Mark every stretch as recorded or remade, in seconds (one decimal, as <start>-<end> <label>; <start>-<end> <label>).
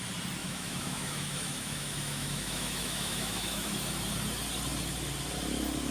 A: 0.0-0.4 recorded; 0.4-3.8 remade; 3.8-5.9 recorded